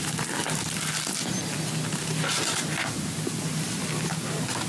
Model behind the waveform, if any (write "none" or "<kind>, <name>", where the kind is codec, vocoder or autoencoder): none